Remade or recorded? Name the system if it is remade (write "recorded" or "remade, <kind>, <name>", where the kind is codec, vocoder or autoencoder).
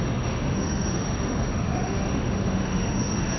remade, autoencoder, DAC-VAE